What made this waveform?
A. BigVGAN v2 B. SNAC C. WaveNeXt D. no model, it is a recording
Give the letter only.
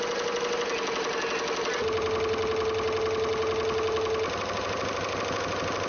D